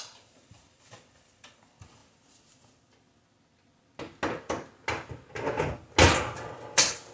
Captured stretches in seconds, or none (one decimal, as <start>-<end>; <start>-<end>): 0.0-7.1